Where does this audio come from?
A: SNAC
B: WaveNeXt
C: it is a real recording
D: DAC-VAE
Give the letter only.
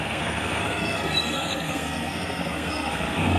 A